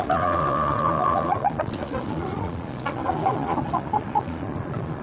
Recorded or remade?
remade